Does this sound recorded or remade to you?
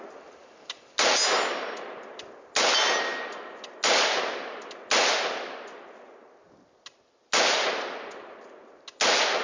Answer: recorded